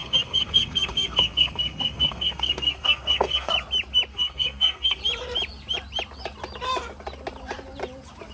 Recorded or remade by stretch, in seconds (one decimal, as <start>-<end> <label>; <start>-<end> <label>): 0.0-3.5 remade; 3.5-4.1 recorded; 4.1-5.0 remade; 5.0-8.3 recorded